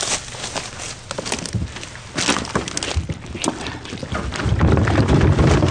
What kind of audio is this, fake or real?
real